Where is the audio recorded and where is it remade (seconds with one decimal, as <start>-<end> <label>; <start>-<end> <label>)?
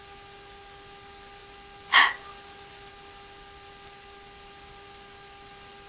0.0-5.9 recorded